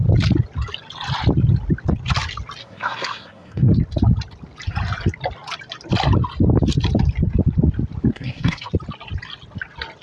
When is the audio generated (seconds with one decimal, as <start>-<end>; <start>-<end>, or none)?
2.6-3.7; 8.1-8.7